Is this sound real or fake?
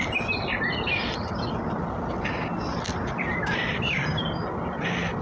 real